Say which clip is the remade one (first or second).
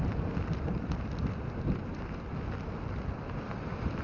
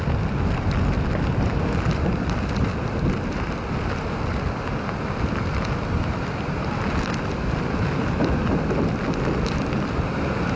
first